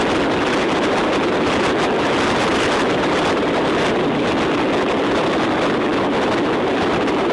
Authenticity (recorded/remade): recorded